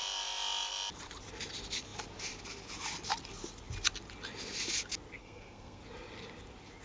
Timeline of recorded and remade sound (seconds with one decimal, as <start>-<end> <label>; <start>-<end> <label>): 0.0-5.2 recorded; 5.2-5.8 remade; 5.8-6.8 recorded